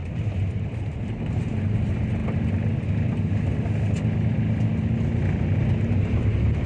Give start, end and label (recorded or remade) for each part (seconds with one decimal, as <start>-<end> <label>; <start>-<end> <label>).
0.0-2.2 remade; 2.2-5.9 recorded; 5.9-6.7 remade